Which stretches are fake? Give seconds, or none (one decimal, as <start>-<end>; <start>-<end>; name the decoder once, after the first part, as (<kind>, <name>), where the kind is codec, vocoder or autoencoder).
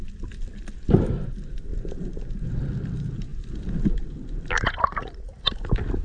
none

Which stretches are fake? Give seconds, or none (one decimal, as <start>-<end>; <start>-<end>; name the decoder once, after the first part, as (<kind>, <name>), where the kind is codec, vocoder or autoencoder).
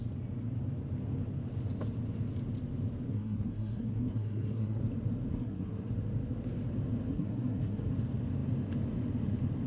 3.1-4.8 (codec, SNAC); 5.3-5.9; 7.1-7.9